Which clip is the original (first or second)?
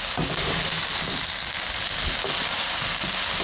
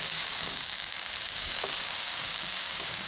first